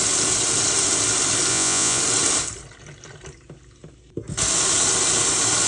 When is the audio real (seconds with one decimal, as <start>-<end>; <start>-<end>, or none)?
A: 0.0-1.5; 2.0-5.7